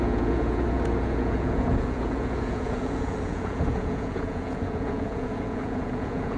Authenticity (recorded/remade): remade